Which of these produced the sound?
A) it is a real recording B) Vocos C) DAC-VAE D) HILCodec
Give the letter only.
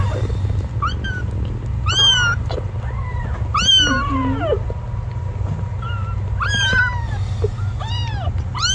A